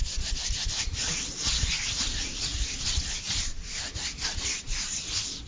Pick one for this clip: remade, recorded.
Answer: recorded